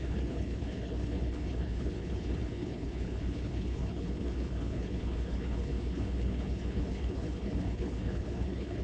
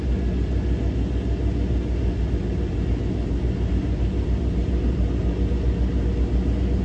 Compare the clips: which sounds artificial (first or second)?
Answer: first